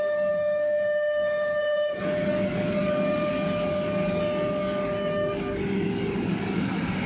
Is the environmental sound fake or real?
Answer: fake